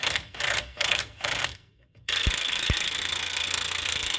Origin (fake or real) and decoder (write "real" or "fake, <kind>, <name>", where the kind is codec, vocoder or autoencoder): fake, codec, SNAC